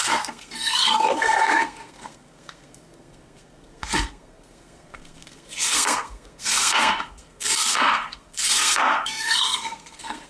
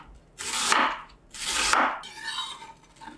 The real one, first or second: second